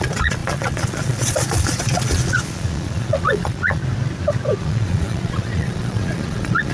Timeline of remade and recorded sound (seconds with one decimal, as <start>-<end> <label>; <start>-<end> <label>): 0.0-3.8 remade; 3.8-4.6 recorded; 4.6-6.7 remade